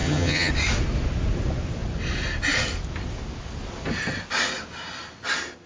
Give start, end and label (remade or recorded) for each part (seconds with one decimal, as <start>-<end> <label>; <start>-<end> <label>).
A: 0.0-0.5 remade; 0.5-5.7 recorded